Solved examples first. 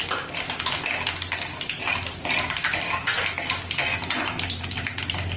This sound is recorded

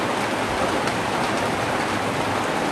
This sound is recorded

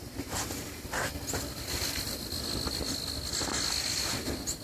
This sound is recorded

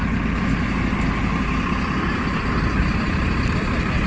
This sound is recorded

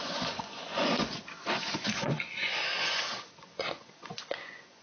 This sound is remade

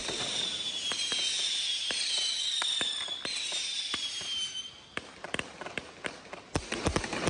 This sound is recorded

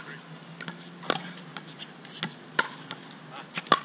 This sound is recorded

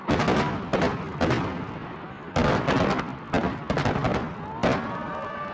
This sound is recorded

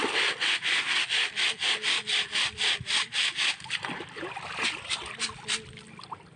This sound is recorded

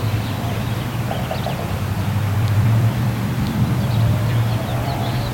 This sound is remade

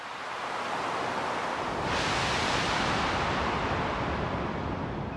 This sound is recorded